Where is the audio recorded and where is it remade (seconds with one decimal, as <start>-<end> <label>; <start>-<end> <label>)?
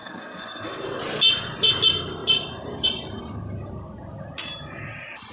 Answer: 0.0-1.0 remade; 1.0-5.3 recorded